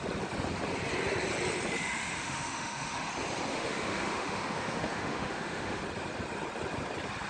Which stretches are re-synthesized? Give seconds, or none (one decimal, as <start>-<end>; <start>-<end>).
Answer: 1.8-3.1; 3.5-5.8